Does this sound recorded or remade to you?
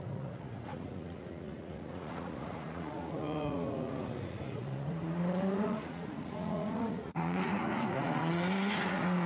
remade